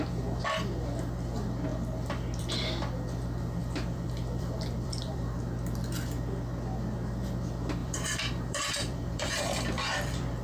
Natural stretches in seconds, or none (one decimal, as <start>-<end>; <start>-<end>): 0.0-3.6; 5.4-7.8